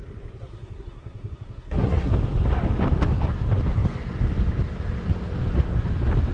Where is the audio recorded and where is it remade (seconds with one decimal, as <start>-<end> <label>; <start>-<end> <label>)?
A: 0.0-0.5 recorded; 0.5-2.1 remade; 2.1-6.3 recorded